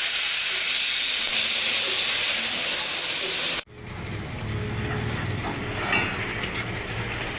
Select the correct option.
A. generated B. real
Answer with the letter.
B